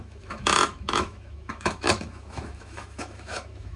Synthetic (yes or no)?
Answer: yes